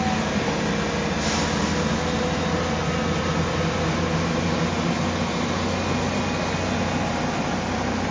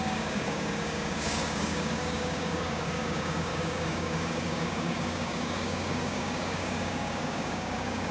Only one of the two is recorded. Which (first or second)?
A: first